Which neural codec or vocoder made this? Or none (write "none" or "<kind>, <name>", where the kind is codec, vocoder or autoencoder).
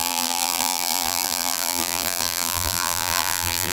vocoder, BigVGAN v2